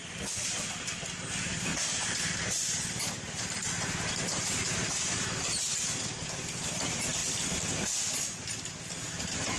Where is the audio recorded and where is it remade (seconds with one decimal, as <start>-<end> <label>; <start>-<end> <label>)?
0.0-1.7 recorded; 1.7-5.6 remade; 5.6-9.6 recorded